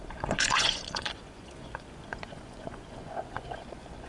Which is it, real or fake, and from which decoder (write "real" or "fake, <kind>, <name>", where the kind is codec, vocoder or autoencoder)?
fake, vocoder, Vocos